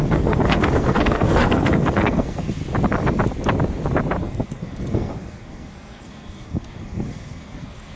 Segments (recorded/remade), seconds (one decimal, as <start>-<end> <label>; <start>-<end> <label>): 0.0-2.6 remade; 2.6-4.2 recorded; 4.2-8.0 remade